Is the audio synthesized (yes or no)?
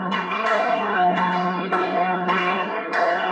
yes